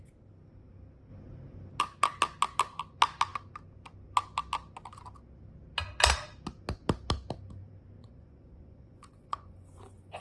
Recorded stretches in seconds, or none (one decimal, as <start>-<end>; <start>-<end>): 0.0-8.0